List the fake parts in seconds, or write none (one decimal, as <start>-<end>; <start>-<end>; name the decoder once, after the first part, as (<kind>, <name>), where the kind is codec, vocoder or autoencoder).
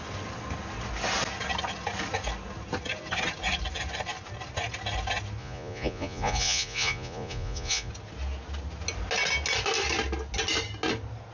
5.4-7.9 (vocoder, Vocos)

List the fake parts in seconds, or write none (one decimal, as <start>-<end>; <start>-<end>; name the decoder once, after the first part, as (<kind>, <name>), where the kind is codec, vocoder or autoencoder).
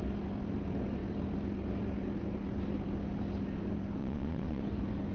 4.0-4.6 (vocoder, Vocos)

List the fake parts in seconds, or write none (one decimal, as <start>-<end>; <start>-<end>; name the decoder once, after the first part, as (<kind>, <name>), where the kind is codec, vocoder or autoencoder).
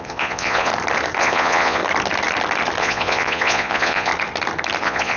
0.0-0.7 (vocoder, Vocos); 1.2-1.8; 2.8-4.1; 4.8-5.2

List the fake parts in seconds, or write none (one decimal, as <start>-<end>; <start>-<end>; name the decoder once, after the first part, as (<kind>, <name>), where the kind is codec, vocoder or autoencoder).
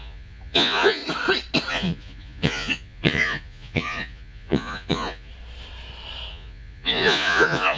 0.0-1.0 (vocoder, Vocos); 1.7-5.3; 6.3-7.8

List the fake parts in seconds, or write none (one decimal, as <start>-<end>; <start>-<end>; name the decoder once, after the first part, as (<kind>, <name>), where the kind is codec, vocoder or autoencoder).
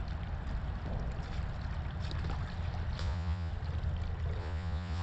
3.0-3.5 (vocoder, Vocos); 4.4-5.0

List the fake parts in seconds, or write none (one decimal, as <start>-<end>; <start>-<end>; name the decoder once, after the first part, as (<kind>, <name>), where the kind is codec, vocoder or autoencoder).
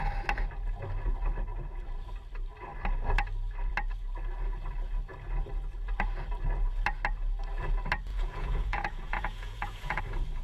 8.1-10.0 (vocoder, Vocos)